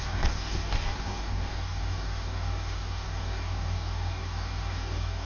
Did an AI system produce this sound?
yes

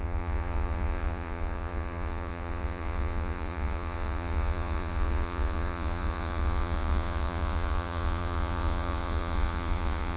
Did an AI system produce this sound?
yes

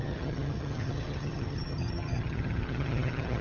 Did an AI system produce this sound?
yes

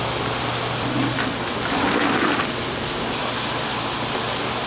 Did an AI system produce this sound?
no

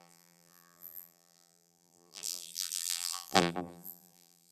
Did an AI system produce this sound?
yes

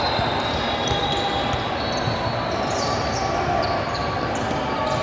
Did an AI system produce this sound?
no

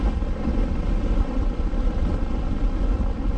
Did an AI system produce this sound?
no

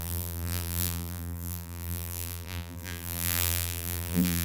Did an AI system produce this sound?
yes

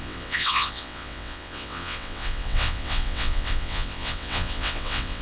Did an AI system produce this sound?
yes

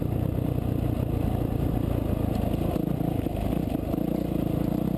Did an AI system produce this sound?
no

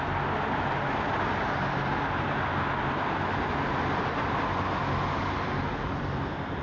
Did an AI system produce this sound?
no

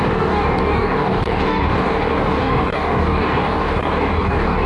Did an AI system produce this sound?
yes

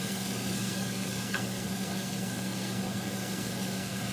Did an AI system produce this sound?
yes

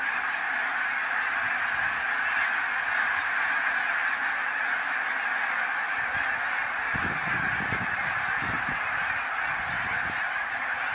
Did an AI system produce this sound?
no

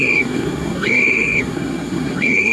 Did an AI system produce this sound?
yes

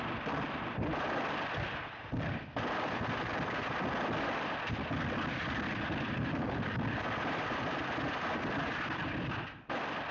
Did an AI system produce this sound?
yes